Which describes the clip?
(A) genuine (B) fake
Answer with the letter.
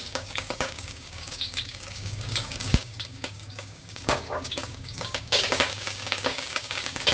B